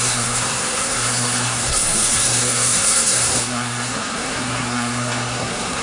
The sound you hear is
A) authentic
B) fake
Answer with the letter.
B